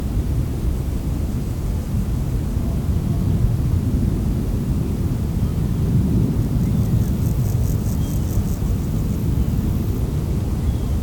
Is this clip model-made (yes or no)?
no